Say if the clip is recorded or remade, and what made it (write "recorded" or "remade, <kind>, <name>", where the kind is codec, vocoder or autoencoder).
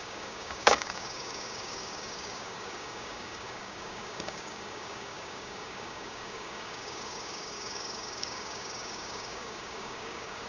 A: remade, codec, DAC